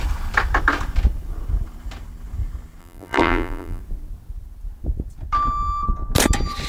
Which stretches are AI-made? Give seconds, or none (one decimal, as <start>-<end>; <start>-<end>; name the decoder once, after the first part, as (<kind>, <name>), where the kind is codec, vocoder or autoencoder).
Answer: 2.8-3.8 (vocoder, BigVGAN v2)